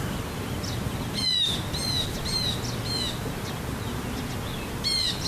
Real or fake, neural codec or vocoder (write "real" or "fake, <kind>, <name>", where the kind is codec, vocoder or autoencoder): real